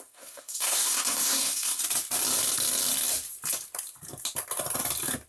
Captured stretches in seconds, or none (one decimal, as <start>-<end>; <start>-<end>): 1.8-5.3